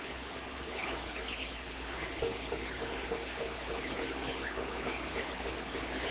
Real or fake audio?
fake